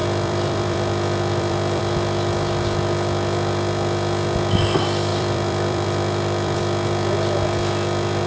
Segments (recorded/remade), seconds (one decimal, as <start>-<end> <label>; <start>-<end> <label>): 0.0-1.8 remade; 1.8-5.1 recorded; 5.1-6.6 remade; 6.6-8.3 recorded